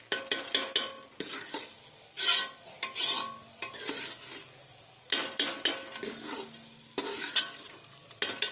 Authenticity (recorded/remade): recorded